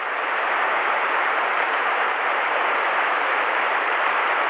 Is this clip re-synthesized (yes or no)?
yes